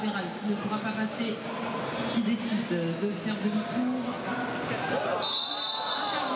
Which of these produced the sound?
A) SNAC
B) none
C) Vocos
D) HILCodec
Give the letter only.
B